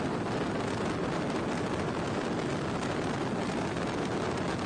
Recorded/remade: recorded